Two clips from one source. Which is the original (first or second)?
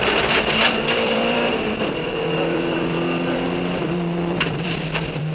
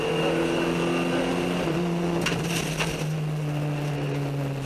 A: second